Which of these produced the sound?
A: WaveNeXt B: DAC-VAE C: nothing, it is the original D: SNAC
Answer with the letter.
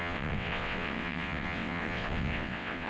A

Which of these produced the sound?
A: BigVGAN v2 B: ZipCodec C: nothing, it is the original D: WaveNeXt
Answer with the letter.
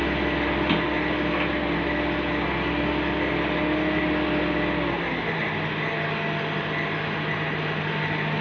C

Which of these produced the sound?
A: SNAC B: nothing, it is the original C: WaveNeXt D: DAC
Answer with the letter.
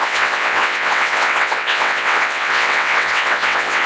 C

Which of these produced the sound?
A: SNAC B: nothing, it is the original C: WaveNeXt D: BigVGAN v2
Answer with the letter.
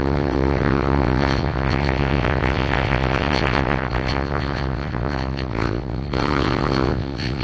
C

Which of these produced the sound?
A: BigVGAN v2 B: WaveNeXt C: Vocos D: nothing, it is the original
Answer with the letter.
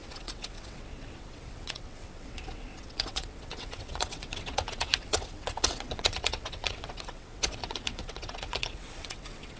B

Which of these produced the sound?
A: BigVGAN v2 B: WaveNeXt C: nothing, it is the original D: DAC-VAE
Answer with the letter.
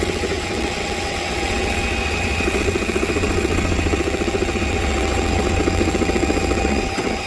B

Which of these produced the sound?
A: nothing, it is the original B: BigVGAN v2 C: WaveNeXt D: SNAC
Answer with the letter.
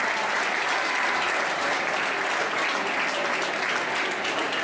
A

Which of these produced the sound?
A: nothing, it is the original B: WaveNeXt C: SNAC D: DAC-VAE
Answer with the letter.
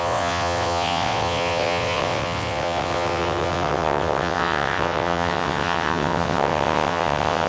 B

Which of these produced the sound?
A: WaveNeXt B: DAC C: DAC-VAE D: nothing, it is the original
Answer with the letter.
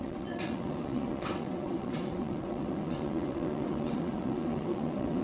A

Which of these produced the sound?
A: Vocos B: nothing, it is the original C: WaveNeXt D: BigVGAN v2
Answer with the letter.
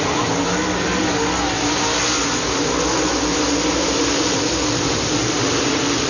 B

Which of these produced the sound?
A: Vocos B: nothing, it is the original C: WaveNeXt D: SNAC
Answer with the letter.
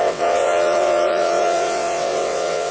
C